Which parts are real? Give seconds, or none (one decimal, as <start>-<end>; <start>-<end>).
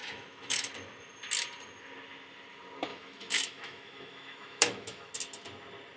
0.7-2.9; 5.1-6.0